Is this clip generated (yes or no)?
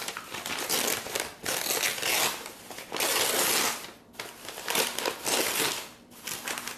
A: no